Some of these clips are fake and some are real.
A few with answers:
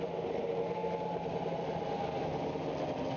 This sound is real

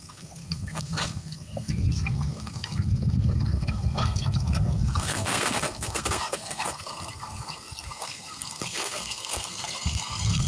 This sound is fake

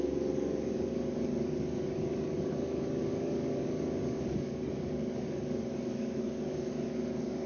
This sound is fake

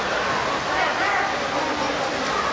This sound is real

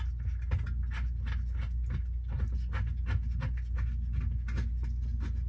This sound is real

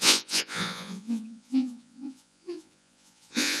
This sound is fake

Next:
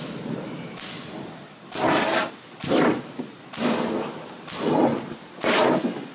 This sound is real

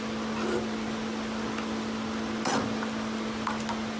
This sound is real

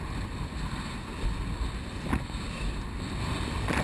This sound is real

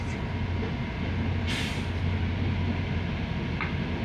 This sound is real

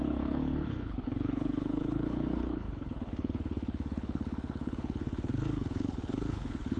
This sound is fake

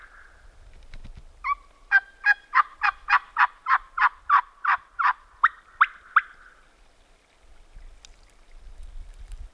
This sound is real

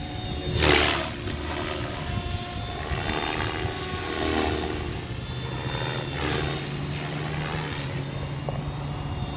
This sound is real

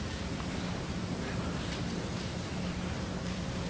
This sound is real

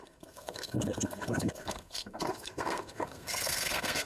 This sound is fake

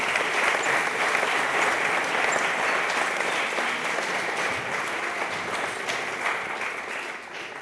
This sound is real